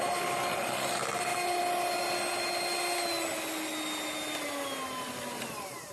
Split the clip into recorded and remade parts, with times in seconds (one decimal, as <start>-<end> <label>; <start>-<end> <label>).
0.0-5.9 recorded